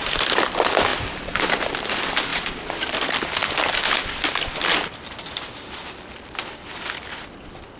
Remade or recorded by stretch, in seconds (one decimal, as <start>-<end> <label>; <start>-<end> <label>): 0.0-0.9 recorded; 0.9-1.7 remade; 1.7-2.3 recorded; 2.3-3.0 remade; 3.0-3.4 recorded; 3.4-5.8 remade; 5.8-7.8 recorded